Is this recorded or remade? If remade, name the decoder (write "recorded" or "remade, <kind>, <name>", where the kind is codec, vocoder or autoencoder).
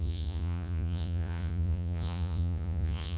remade, vocoder, Vocos